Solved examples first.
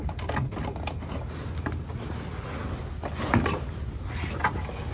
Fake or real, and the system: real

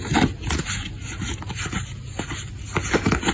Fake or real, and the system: real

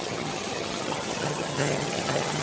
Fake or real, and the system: fake, vocoder, HiFi-GAN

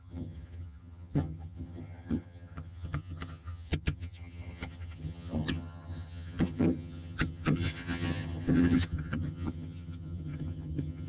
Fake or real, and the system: fake, vocoder, HiFi-GAN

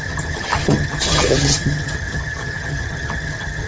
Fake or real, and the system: fake, vocoder, HiFi-GAN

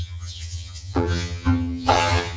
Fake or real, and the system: fake, vocoder, HiFi-GAN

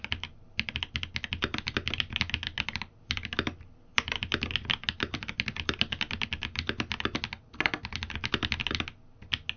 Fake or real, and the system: real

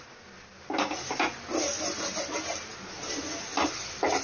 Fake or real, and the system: real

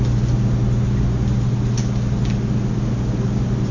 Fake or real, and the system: real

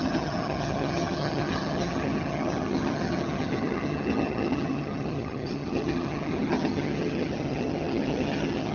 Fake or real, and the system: fake, vocoder, HiFi-GAN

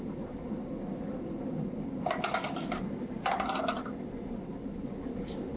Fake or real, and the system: real